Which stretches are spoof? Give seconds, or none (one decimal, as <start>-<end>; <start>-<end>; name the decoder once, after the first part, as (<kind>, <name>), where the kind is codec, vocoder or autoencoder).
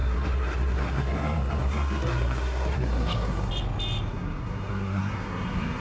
0.0-3.5 (codec, SNAC); 4.1-5.8